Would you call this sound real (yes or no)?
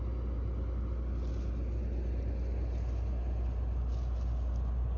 yes